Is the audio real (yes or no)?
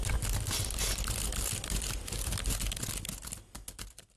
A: yes